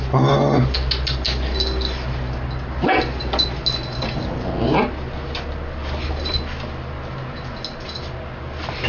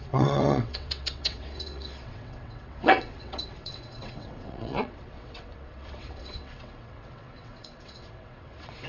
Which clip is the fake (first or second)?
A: second